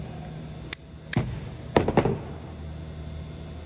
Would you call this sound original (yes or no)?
yes